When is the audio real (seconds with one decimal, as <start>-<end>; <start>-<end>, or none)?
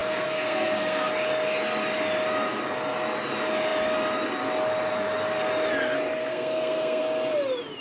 1.1-6.3; 7.0-7.8